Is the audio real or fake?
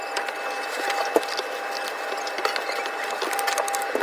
real